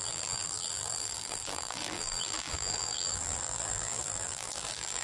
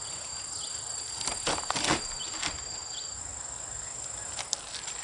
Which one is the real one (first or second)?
second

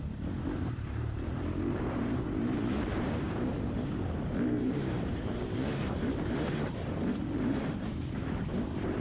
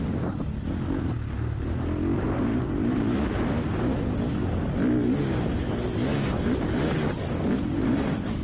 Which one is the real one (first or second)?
second